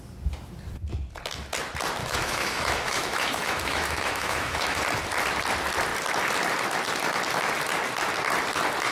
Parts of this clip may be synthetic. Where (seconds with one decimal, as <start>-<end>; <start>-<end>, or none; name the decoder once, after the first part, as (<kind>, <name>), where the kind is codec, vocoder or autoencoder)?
2.0-4.8 (autoencoder, DAC-VAE)